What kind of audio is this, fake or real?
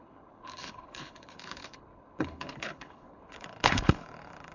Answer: fake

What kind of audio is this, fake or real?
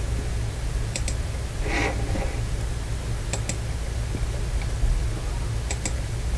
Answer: real